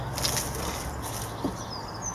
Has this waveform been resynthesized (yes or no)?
no